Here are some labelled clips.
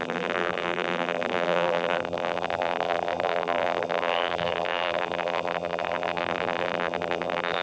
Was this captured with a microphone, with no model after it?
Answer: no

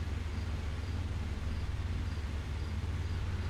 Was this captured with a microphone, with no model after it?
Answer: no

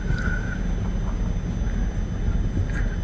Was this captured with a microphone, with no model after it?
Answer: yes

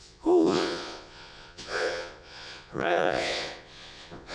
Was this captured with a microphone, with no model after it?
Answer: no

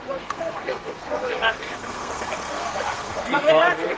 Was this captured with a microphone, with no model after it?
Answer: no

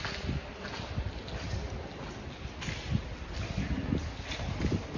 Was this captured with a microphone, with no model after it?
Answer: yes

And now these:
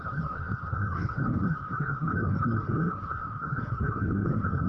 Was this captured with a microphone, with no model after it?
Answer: no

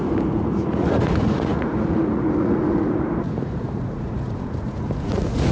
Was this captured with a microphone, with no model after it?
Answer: no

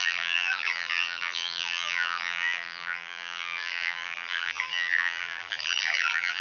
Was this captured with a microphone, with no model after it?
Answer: no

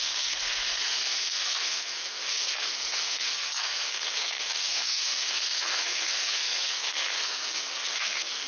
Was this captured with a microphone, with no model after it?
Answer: no